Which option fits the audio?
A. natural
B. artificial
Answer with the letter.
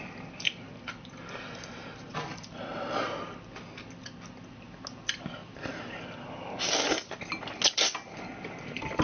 A